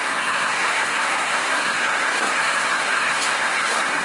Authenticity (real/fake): fake